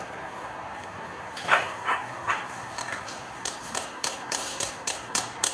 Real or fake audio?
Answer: fake